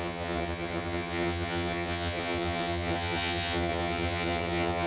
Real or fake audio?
fake